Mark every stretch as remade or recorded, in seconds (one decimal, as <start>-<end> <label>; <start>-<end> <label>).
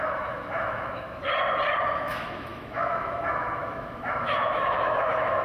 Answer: 0.0-1.2 remade; 1.2-1.8 recorded; 1.8-5.4 remade